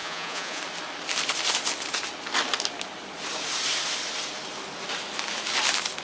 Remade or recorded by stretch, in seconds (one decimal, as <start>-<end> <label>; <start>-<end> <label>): 0.0-0.6 remade; 0.6-6.0 recorded

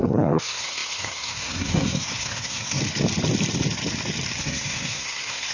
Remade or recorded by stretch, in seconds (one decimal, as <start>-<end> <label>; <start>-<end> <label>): 0.0-2.8 remade; 2.8-4.4 recorded; 4.4-5.5 remade

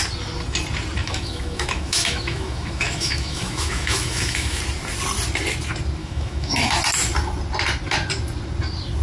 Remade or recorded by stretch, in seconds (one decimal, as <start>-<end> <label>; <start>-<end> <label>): 0.0-1.0 recorded; 1.0-4.6 remade; 4.6-6.0 recorded; 6.0-6.8 remade; 6.8-9.0 recorded

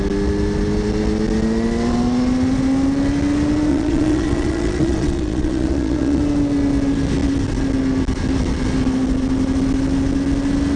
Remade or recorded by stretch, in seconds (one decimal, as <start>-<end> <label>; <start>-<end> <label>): 0.0-3.7 recorded; 3.7-6.2 remade; 6.2-10.8 recorded